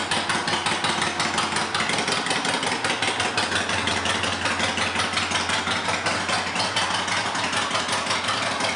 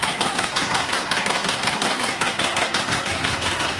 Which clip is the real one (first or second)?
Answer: first